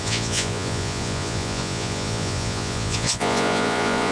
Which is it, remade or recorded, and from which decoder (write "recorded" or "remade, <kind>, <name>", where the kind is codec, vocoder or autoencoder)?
remade, vocoder, Vocos